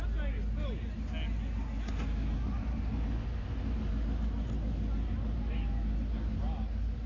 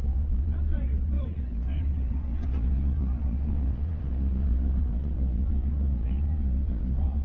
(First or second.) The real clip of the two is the first